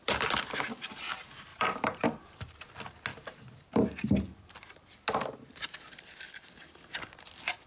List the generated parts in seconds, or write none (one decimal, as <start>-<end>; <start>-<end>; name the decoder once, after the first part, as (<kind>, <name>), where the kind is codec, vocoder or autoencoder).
1.5-2.7 (vocoder, BigVGAN v2); 3.1-4.6